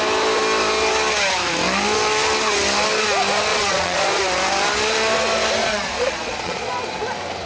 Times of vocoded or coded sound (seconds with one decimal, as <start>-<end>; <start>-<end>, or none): 3.5-4.2; 5.6-6.7